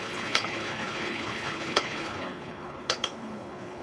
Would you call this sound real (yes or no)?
no